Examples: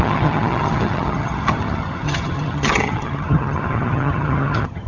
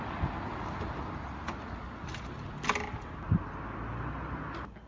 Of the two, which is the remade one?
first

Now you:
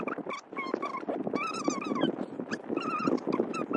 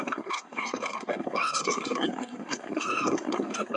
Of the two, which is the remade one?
second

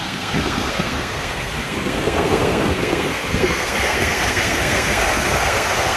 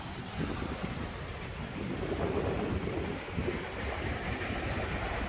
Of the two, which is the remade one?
first